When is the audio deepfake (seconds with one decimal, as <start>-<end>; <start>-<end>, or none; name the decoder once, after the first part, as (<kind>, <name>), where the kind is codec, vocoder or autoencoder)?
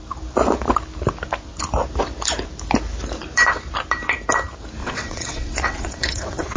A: 4.8-6.6 (vocoder, WaveNeXt)